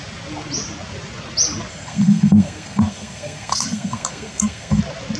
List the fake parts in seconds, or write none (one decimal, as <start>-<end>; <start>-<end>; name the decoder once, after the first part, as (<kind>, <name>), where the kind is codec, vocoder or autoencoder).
1.7-4.8 (codec, SNAC)